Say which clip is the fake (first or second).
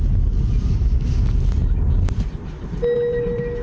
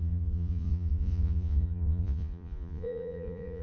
second